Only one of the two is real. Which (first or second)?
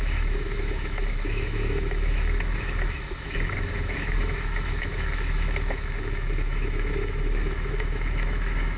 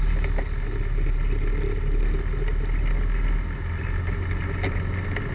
second